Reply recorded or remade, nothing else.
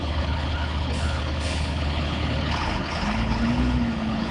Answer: remade